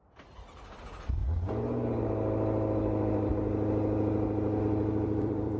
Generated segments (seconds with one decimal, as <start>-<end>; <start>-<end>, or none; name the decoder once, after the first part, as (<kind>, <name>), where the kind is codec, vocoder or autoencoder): 0.0-1.2 (vocoder, BigVGAN v2); 4.6-5.6